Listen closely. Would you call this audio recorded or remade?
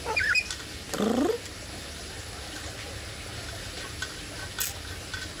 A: recorded